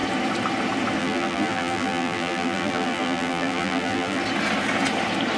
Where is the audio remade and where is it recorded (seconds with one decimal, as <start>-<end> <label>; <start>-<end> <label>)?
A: 0.0-1.0 recorded; 1.0-4.2 remade; 4.2-5.4 recorded